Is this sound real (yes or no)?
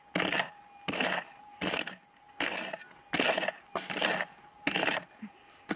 yes